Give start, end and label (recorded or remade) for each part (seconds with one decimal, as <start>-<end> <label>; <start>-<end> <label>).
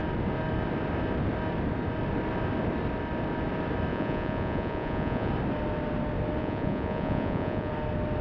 0.0-3.9 recorded; 3.9-5.3 remade; 5.3-6.4 recorded; 6.4-7.7 remade; 7.7-8.2 recorded